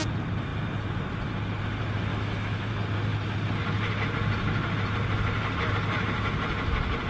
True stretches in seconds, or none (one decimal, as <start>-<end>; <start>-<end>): 0.0-2.1; 2.7-7.1